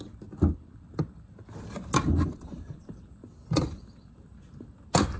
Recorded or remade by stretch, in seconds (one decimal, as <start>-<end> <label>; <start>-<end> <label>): 0.0-5.2 recorded